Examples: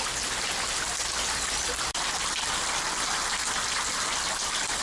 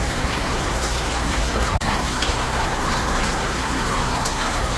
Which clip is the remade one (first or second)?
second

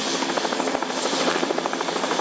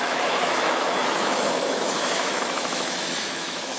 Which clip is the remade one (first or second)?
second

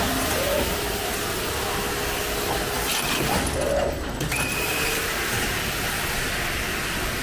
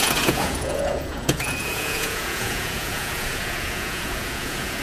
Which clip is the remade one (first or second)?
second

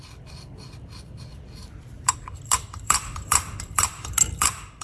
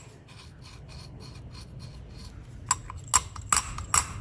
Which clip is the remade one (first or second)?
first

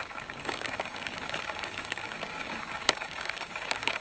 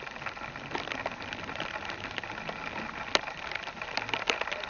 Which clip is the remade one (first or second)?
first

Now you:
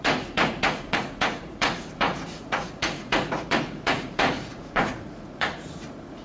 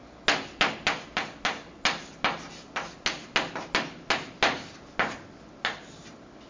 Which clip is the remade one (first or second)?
first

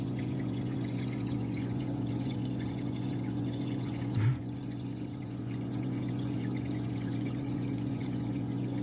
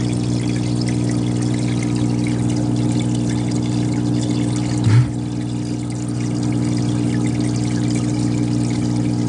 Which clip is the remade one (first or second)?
first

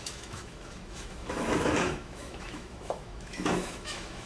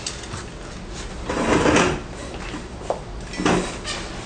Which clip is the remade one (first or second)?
first